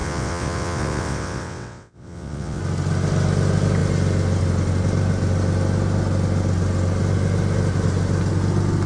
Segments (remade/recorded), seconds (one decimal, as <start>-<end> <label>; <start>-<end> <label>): 0.0-2.6 remade; 2.6-8.9 recorded